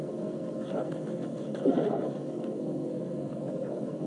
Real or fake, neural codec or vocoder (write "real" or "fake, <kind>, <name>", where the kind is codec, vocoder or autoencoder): fake, codec, SNAC